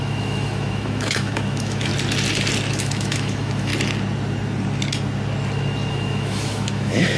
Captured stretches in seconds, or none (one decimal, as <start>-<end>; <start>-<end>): 1.9-2.7; 3.7-5.9